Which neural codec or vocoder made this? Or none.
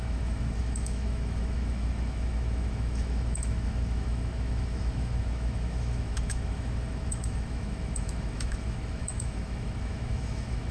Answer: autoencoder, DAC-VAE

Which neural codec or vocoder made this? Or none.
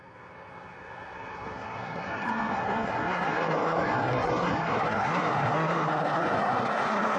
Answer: codec, SNAC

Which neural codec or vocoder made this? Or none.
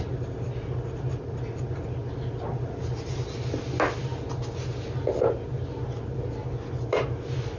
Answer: none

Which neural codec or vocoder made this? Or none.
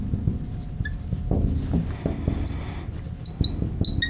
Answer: none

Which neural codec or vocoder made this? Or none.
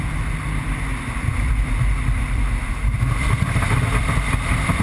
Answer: vocoder, BigVGAN v2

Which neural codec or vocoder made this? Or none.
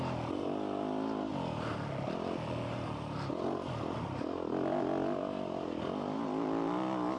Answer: none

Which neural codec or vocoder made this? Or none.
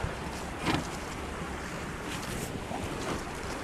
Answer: vocoder, BigVGAN v2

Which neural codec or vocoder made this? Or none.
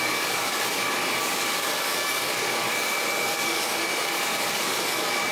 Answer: codec, DAC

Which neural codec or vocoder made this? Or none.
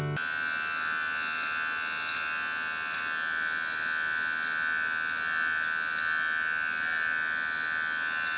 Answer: none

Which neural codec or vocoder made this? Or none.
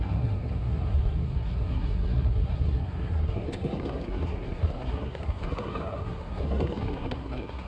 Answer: codec, SNAC